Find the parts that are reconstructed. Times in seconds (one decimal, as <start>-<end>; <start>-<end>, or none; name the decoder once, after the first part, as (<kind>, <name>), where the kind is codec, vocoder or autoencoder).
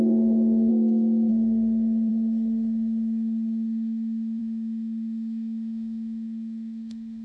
0.0-0.7 (autoencoder, DAC-VAE); 1.3-7.2